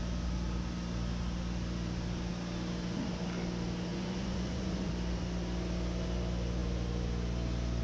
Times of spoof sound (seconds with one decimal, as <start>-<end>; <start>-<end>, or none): 3.9-4.9